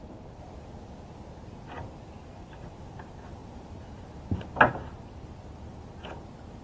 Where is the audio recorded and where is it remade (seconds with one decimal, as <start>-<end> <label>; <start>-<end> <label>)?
0.0-6.6 recorded